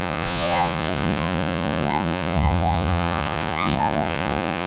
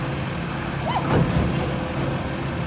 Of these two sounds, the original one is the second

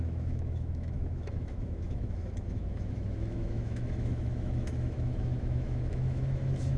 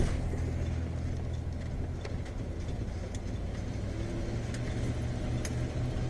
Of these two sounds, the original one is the second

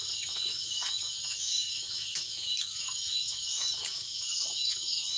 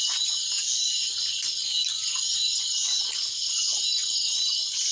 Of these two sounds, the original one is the second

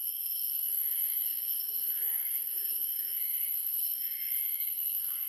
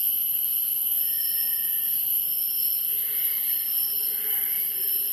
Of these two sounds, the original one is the second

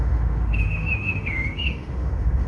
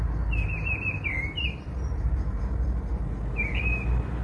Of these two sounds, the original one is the second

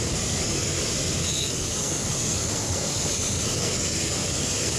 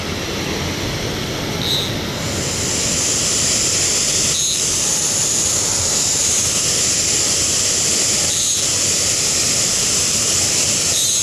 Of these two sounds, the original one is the second